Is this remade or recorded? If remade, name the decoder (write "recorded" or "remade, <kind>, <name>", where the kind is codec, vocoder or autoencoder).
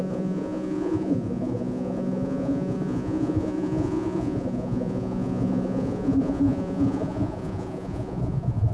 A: remade, vocoder, Vocos